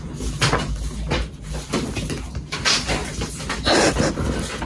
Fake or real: real